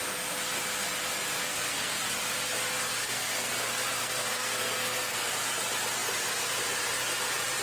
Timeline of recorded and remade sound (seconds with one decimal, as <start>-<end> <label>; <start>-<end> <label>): 0.0-1.4 recorded; 1.4-2.0 remade; 2.0-2.9 recorded; 2.9-3.5 remade; 3.5-4.0 recorded; 4.0-5.3 remade; 5.3-7.6 recorded